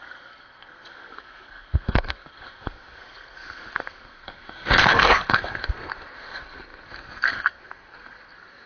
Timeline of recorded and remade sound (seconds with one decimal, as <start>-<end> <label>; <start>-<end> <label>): 0.0-8.7 remade